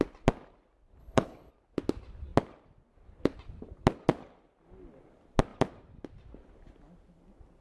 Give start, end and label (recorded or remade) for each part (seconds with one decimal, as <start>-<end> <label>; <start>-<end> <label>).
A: 0.0-1.0 recorded; 1.0-1.5 remade; 1.5-7.6 recorded

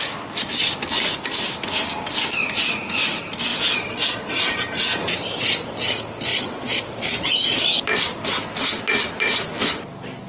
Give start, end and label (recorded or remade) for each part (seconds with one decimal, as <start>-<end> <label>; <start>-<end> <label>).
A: 0.0-3.5 recorded; 3.5-4.3 remade; 4.3-6.3 recorded; 6.3-6.8 remade; 6.8-10.3 recorded